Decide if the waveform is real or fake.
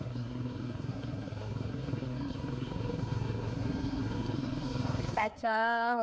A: fake